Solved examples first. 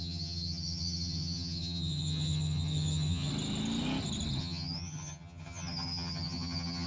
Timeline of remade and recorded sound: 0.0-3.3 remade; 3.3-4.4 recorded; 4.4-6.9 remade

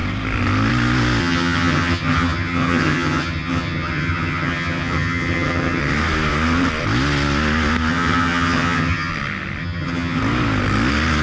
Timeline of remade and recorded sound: 0.0-1.2 recorded; 1.2-5.8 remade; 5.8-7.9 recorded; 7.9-9.1 remade; 9.1-9.6 recorded; 9.6-10.2 remade; 10.2-11.2 recorded